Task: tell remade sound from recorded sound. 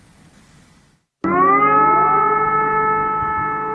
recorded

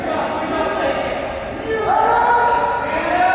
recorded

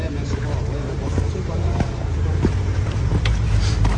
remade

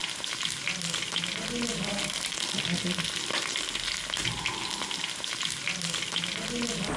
recorded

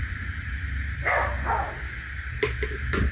recorded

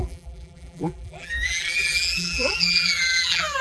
remade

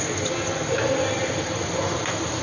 recorded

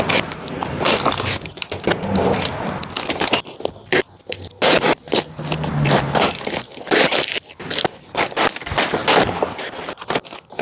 recorded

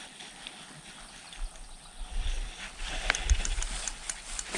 recorded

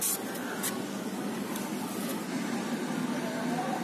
recorded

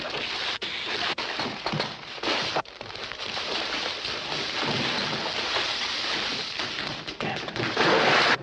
recorded